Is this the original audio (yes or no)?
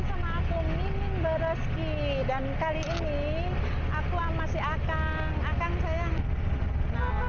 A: yes